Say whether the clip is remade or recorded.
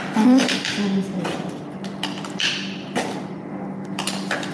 recorded